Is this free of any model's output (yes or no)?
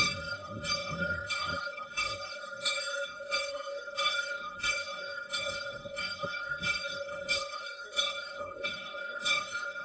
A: no